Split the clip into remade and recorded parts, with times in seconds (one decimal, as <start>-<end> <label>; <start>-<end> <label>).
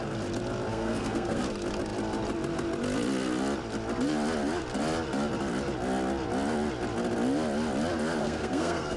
0.0-0.7 recorded; 0.7-1.4 remade; 1.4-8.2 recorded; 8.2-9.0 remade